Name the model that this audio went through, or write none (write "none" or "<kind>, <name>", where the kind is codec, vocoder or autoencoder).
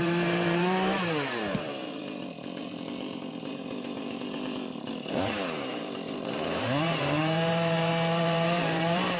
vocoder, BigVGAN v2